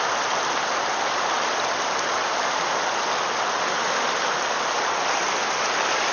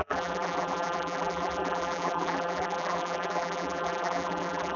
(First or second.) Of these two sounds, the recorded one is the first